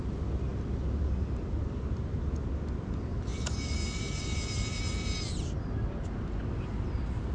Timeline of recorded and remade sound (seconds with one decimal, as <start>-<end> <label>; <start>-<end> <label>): 0.0-7.3 recorded